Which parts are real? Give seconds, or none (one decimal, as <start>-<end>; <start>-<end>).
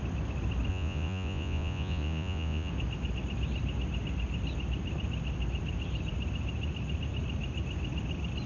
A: 0.0-0.7; 2.7-8.5